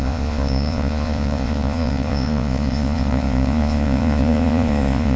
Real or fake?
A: fake